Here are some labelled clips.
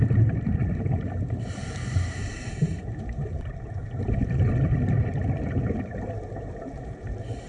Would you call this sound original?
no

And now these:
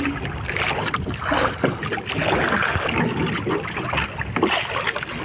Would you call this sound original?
yes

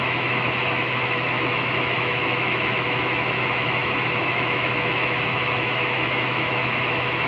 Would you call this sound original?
no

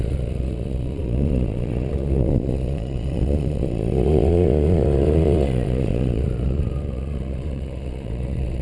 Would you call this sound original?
no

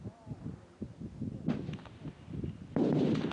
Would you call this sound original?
yes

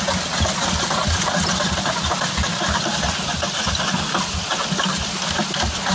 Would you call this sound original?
yes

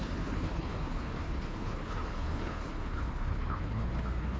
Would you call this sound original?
no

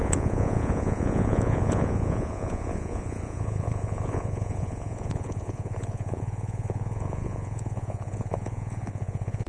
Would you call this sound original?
no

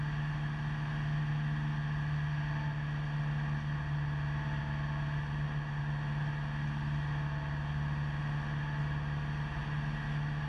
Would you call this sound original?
yes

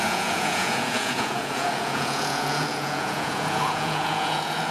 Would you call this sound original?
no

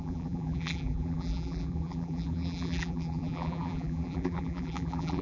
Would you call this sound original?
no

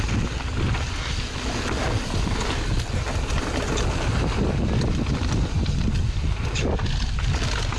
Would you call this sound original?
yes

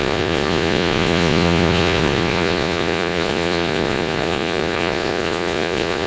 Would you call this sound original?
no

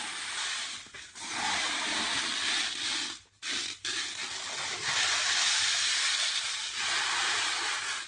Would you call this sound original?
yes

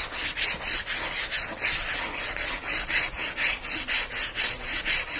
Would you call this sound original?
yes